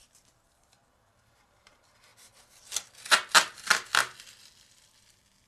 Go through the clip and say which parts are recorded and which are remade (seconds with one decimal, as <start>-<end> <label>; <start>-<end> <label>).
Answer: 0.0-2.1 remade; 2.1-5.5 recorded